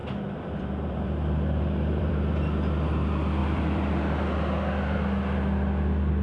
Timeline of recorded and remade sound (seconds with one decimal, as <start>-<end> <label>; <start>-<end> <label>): 0.0-2.4 remade; 2.4-3.4 recorded; 3.4-3.9 remade; 3.9-6.2 recorded